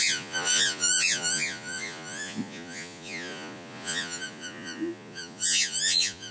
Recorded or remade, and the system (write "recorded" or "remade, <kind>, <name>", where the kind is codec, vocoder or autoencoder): remade, vocoder, Vocos